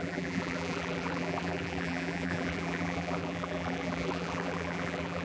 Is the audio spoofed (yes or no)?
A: yes